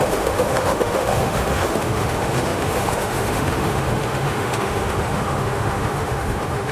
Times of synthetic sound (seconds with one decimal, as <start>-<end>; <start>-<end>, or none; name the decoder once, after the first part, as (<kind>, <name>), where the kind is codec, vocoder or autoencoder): 0.0-6.7 (autoencoder, DAC-VAE)